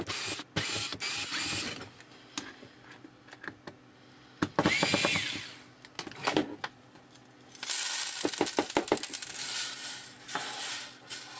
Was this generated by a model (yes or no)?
no